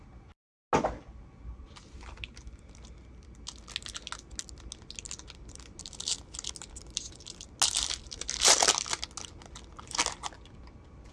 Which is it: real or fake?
real